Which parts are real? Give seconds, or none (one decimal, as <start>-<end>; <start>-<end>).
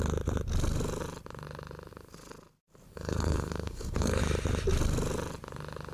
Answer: 0.0-2.9; 4.2-5.9